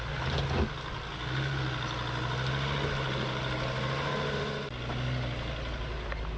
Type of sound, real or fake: real